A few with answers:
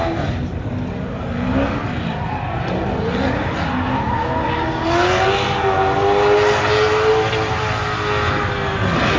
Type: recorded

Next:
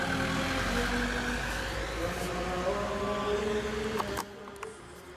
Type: recorded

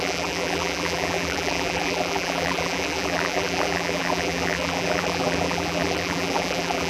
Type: remade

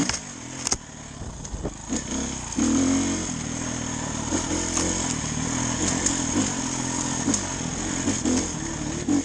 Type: recorded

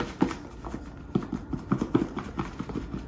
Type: remade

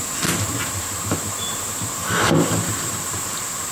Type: remade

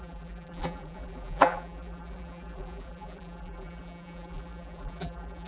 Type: remade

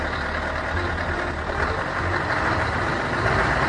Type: remade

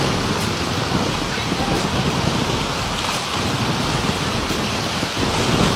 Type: recorded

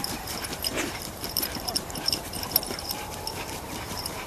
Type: remade